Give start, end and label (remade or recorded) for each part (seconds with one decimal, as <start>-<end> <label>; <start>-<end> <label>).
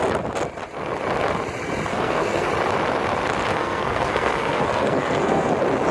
0.0-1.9 recorded; 1.9-2.5 remade; 2.5-3.5 recorded; 3.5-5.5 remade; 5.5-5.9 recorded